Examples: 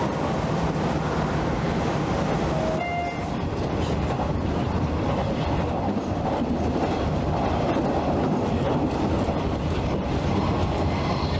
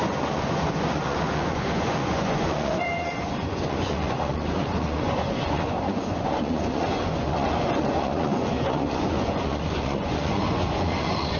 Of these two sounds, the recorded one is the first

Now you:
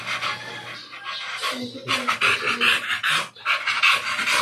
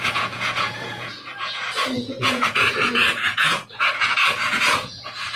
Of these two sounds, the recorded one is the first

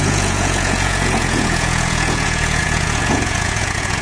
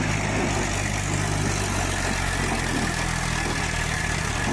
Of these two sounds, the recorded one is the second